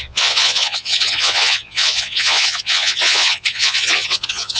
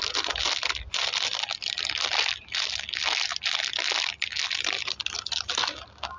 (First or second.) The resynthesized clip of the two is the first